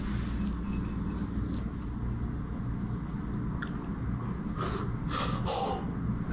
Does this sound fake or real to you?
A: real